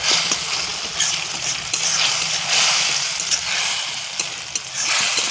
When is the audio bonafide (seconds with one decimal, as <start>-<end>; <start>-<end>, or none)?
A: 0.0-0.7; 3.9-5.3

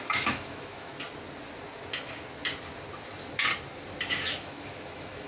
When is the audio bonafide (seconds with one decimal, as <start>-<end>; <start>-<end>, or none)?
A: 0.9-4.1

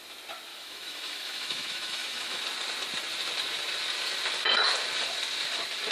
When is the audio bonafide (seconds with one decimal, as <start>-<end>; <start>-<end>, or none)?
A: 0.0-0.5; 2.4-5.9

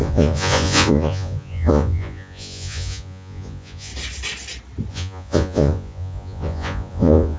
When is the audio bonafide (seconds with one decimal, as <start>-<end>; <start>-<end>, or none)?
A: 3.9-4.9

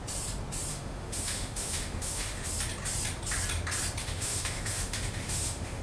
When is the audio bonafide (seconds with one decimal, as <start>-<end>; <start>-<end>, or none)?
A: 0.0-0.7; 2.5-4.0